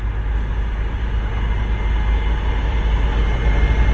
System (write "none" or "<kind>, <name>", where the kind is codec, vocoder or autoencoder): none